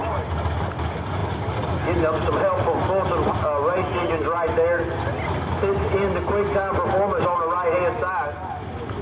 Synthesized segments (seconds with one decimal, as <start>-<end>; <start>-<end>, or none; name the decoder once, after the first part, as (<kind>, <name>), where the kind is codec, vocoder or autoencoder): none

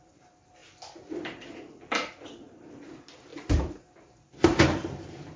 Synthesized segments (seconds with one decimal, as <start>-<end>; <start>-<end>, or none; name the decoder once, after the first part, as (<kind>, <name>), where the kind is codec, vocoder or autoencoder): none

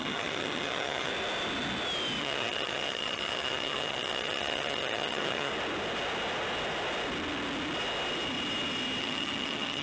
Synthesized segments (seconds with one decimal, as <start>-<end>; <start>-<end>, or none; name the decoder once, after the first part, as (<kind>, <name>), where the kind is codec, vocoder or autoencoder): 0.0-1.1 (vocoder, HiFi-GAN); 2.2-5.5; 9.0-9.8

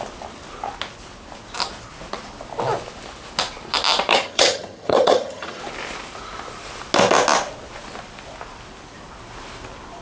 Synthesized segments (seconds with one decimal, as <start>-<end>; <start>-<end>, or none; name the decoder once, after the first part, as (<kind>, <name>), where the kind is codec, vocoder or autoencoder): 4.1-5.6 (vocoder, HiFi-GAN)

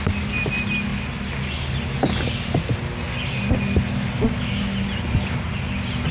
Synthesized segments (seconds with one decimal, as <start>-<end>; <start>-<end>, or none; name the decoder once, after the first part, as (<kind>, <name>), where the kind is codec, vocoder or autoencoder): none